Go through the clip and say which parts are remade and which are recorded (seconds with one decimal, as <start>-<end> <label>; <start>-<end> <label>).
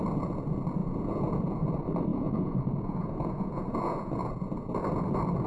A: 0.0-0.8 recorded; 0.8-1.7 remade; 1.7-2.1 recorded; 2.1-4.7 remade; 4.7-5.5 recorded